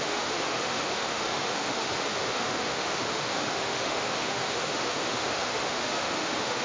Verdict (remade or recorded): remade